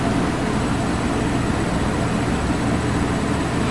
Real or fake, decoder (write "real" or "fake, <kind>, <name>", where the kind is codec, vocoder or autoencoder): real